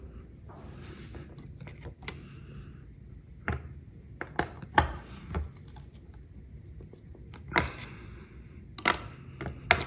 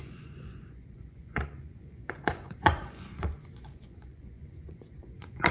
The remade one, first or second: second